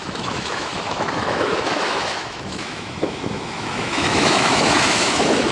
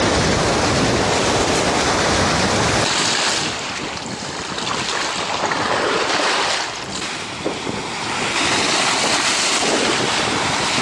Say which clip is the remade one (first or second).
first